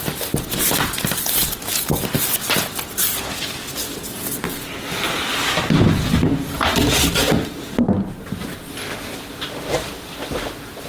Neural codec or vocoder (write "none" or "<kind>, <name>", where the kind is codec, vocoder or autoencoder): none